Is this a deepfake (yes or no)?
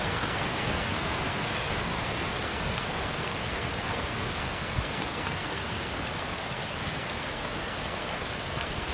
yes